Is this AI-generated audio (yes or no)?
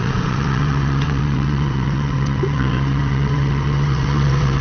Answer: yes